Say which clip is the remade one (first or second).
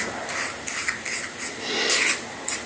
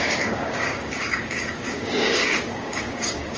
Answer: second